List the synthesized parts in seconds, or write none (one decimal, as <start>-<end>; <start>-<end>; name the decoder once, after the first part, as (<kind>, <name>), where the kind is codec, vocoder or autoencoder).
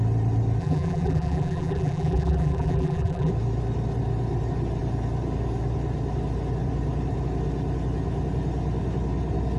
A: 0.6-3.3 (vocoder, BigVGAN v2)